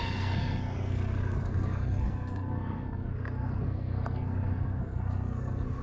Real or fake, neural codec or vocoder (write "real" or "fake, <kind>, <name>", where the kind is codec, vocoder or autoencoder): fake, codec, SNAC